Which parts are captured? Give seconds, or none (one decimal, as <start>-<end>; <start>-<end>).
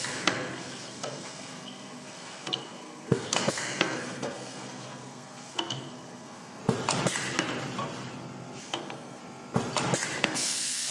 6.6-8.6; 9.2-10.2